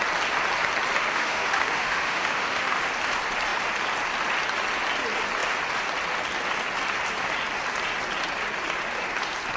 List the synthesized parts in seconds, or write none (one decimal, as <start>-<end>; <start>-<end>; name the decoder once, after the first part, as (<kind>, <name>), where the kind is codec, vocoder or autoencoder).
1.1-2.9 (autoencoder, DAC-VAE)